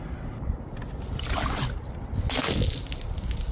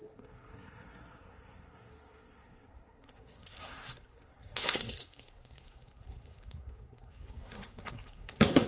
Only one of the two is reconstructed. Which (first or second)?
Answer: second